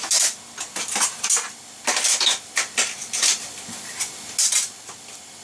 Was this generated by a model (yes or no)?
no